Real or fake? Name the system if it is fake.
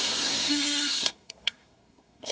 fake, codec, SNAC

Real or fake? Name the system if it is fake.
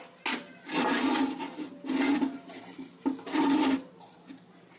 real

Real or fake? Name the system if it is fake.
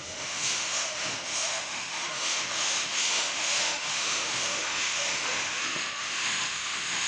fake, autoencoder, DAC-VAE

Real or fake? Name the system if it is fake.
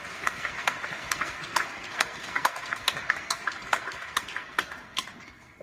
fake, codec, SNAC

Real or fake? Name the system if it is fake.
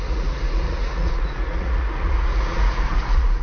fake, vocoder, Vocos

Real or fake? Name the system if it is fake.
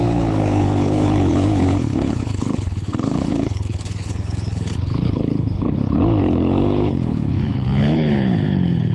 fake, codec, HILCodec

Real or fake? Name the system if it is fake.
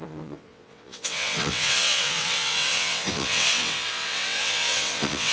fake, vocoder, WaveNeXt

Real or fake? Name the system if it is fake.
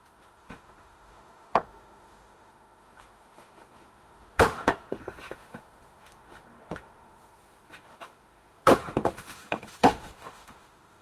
fake, autoencoder, DAC-VAE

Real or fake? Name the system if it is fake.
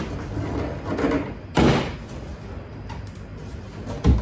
real